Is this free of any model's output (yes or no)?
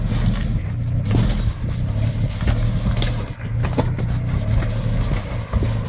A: yes